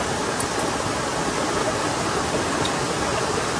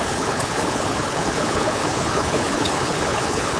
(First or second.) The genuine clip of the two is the first